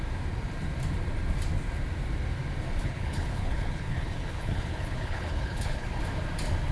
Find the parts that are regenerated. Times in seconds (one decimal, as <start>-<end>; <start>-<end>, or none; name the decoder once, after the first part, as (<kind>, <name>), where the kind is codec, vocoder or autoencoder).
2.8-5.9 (codec, HILCodec)